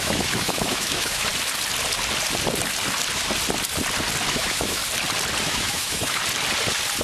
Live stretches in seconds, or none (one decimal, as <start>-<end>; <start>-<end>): 1.3-4.3; 4.8-5.4; 6.2-7.0